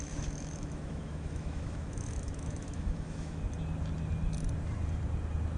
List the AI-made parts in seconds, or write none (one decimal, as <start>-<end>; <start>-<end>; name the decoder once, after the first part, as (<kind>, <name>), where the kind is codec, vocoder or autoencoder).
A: 0.0-3.4 (autoencoder, DAC-VAE)